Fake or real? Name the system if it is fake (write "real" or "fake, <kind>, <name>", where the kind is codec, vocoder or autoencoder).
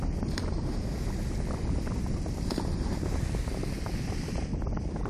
real